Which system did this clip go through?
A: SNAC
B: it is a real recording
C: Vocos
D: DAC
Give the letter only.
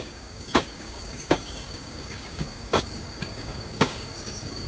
D